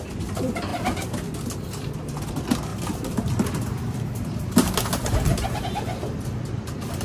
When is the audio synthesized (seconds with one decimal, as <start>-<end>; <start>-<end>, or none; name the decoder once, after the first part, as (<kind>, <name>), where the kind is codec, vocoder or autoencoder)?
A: 0.7-2.3 (vocoder, BigVGAN v2); 2.7-5.6